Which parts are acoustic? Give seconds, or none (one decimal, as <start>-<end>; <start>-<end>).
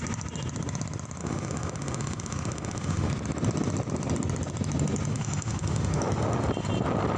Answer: 0.0-1.2; 3.1-5.1; 6.0-7.2